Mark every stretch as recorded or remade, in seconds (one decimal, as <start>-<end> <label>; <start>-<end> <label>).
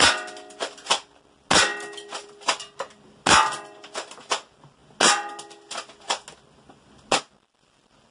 0.0-8.1 recorded